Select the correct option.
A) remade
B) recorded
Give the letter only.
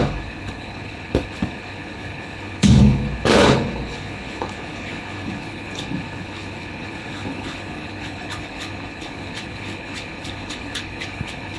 A